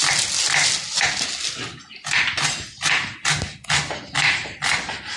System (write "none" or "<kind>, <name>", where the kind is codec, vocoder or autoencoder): none